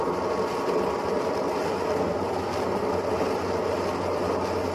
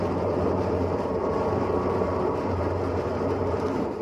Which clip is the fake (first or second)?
second